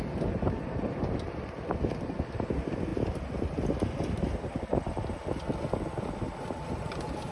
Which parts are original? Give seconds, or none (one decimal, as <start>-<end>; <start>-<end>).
0.0-7.3

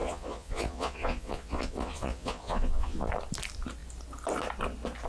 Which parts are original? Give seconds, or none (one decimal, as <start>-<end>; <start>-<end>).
3.1-5.1

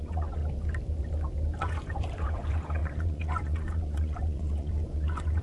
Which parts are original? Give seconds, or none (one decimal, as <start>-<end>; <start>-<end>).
0.4-1.6

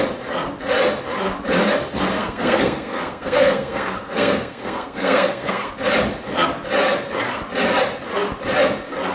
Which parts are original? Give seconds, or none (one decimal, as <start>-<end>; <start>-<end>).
0.0-2.1; 5.7-9.1

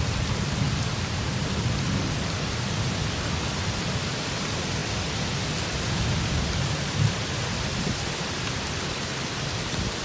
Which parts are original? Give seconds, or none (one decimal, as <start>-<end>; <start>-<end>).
0.0-10.0

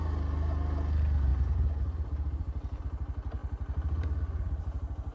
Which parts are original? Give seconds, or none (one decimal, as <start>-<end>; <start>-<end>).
0.0-5.1

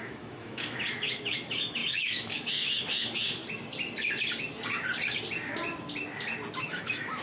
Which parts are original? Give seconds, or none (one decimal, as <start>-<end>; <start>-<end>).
3.4-6.6

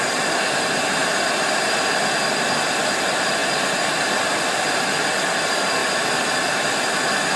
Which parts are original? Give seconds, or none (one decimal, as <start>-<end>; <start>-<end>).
0.0-7.4